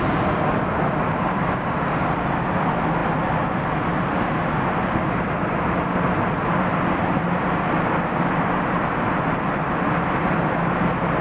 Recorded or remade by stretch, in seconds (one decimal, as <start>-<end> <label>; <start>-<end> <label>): 0.0-11.2 recorded